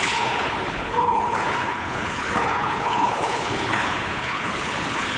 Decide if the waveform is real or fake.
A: fake